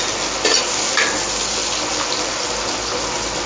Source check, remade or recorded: recorded